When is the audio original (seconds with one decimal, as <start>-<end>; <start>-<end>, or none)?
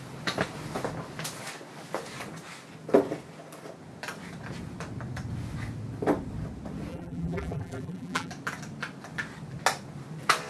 0.0-6.9; 8.3-10.5